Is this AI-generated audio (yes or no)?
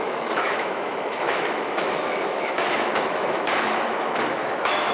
yes